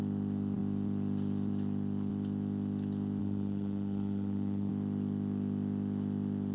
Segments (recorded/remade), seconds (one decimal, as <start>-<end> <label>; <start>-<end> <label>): 0.0-3.2 recorded; 3.2-4.7 remade; 4.7-6.5 recorded